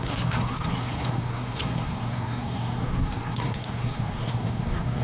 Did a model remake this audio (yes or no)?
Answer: yes